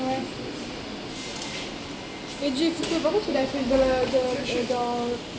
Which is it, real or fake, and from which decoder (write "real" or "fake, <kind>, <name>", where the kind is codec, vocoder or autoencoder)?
real